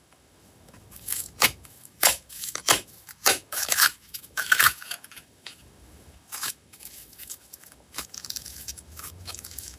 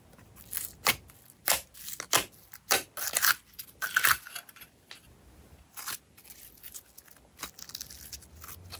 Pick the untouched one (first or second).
second